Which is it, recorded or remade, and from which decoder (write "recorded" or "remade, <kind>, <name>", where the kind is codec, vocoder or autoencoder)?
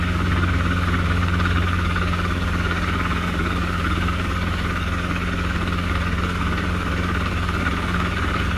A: remade, codec, DAC